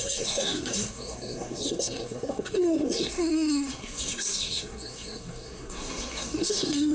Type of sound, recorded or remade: remade